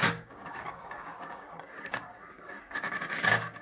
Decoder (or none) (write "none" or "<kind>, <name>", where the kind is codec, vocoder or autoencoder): codec, DAC